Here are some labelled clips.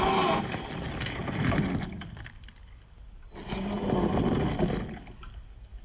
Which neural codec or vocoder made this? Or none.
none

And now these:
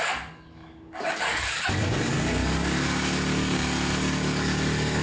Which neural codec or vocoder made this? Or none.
codec, DAC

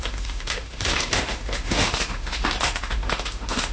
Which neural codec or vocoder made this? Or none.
autoencoder, DAC-VAE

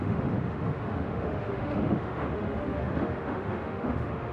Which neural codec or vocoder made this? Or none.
autoencoder, DAC-VAE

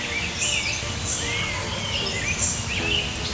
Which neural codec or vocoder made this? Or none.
none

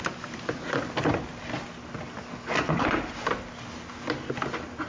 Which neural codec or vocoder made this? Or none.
none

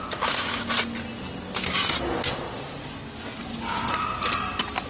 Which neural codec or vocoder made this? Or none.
none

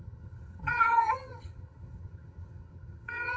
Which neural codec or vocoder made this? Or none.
vocoder, HiFi-GAN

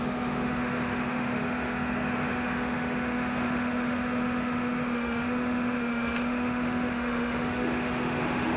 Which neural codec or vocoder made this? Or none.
autoencoder, DAC-VAE